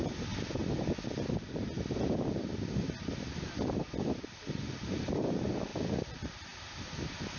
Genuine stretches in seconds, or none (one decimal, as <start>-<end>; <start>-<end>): 0.0-0.6; 5.0-5.7; 6.2-7.4